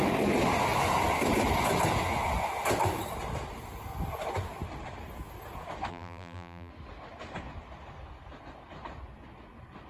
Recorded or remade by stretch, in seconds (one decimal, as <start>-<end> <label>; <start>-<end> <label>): 0.0-5.9 recorded; 5.9-6.7 remade; 6.7-9.9 recorded